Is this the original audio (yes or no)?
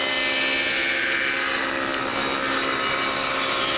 yes